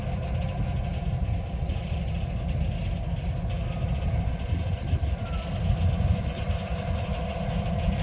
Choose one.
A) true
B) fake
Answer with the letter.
A